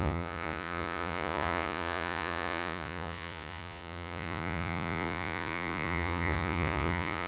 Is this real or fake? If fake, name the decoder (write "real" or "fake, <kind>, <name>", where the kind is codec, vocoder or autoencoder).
fake, vocoder, Vocos